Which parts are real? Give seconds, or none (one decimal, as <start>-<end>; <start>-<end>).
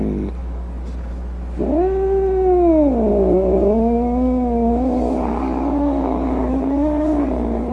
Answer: 0.0-0.4; 1.1-3.1